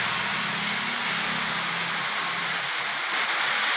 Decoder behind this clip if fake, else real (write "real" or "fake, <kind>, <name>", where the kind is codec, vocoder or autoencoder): real